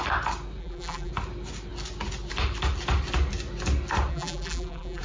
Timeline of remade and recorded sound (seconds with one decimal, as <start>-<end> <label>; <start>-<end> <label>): 0.0-0.6 recorded; 0.6-1.1 remade; 1.1-4.1 recorded; 4.1-5.0 remade